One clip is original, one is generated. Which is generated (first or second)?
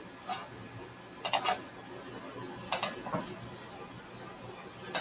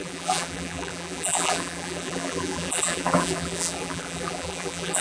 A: second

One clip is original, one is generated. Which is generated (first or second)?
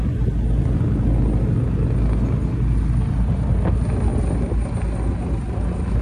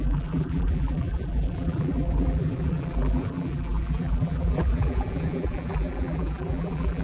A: second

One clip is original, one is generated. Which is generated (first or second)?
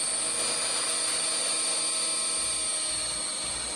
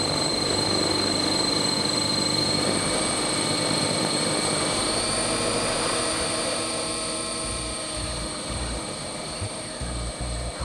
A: second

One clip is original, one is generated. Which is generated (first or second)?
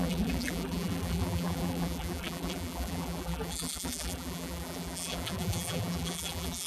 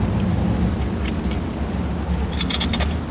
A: first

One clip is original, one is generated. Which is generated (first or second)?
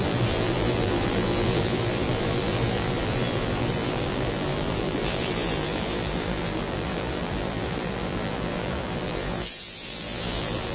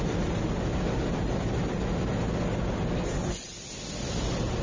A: first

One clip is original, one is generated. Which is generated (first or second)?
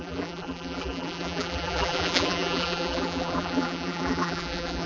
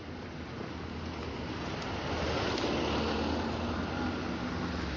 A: first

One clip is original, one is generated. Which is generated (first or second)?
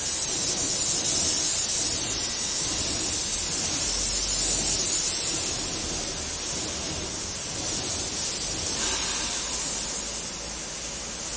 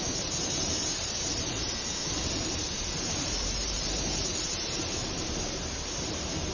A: second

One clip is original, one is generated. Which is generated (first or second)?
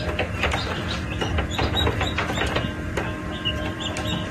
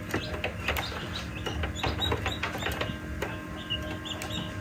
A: first